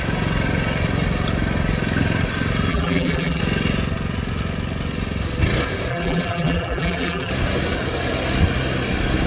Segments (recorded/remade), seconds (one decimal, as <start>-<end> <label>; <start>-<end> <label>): 0.0-2.7 recorded; 2.7-3.4 remade; 3.4-5.9 recorded; 5.9-7.3 remade; 7.3-9.3 recorded